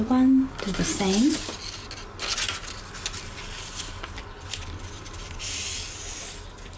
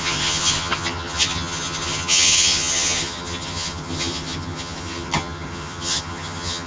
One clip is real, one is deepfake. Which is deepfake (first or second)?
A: second